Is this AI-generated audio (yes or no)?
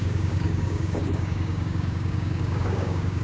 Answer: yes